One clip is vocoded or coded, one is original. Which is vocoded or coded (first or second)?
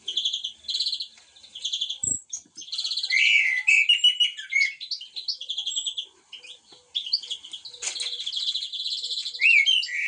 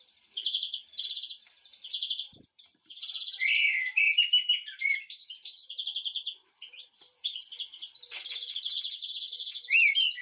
second